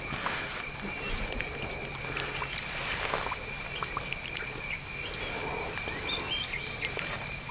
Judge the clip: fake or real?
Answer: real